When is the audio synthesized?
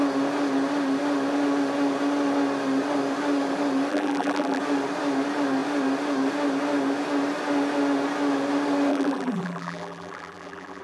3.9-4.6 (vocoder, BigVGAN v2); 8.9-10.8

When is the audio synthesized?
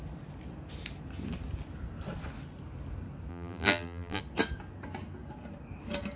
3.3-4.2 (vocoder, BigVGAN v2)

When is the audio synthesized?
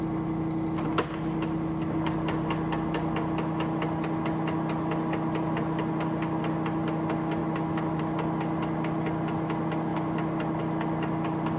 none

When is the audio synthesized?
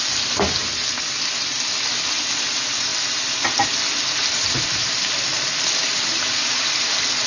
none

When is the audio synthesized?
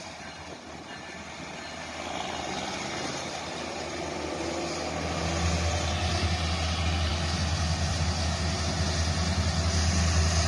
none